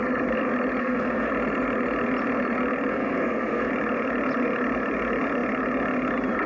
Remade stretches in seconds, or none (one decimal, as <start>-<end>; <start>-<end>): 0.8-1.3; 2.9-3.7